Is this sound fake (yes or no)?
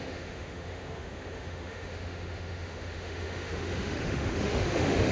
yes